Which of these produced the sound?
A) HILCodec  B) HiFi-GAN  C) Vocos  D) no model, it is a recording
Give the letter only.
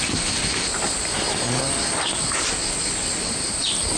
D